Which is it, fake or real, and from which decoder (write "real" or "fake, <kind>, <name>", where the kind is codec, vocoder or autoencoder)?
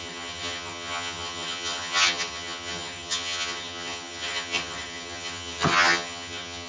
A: fake, vocoder, HiFi-GAN